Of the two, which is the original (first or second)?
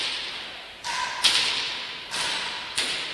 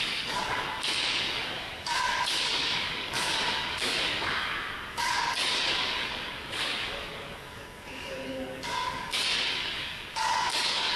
first